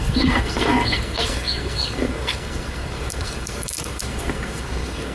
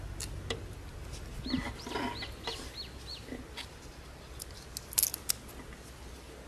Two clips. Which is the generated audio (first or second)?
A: first